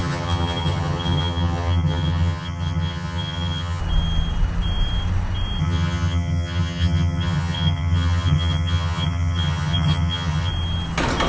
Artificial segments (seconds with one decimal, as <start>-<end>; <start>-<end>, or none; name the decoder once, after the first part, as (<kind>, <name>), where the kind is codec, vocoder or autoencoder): 0.0-3.8 (vocoder, HiFi-GAN); 5.6-10.5